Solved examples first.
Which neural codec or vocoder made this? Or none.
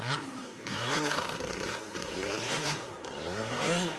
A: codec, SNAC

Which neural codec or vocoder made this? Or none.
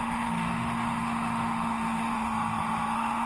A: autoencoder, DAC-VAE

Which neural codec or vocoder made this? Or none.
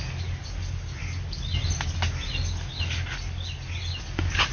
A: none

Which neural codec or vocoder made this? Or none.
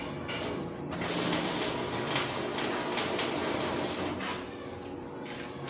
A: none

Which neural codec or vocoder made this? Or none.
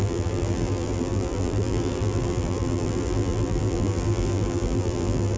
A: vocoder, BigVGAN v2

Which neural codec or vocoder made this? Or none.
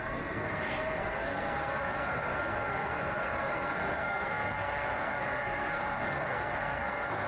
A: codec, SNAC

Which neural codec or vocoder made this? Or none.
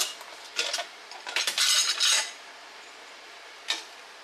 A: none